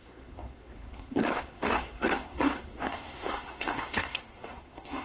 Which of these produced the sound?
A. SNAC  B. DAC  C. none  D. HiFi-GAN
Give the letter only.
A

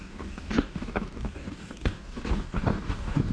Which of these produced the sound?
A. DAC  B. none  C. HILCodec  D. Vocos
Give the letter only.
A